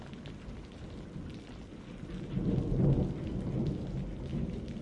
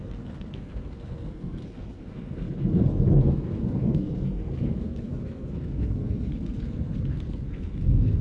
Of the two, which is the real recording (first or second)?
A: first